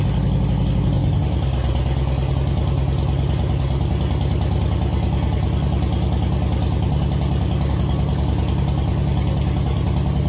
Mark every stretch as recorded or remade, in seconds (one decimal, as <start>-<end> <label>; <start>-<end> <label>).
0.0-10.3 recorded